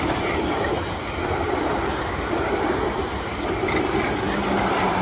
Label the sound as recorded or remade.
remade